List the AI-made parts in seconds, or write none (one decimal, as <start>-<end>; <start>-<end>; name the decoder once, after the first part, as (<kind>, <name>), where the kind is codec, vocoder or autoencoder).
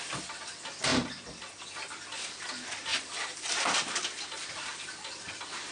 2.9-3.5 (vocoder, BigVGAN v2)